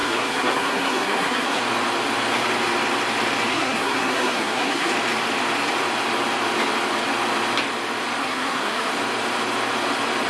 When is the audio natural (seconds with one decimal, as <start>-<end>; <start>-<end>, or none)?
1.6-3.5; 4.9-8.2; 8.9-10.3